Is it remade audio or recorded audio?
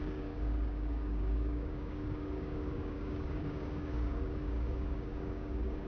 remade